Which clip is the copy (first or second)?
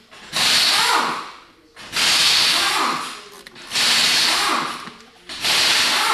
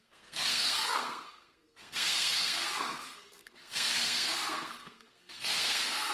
second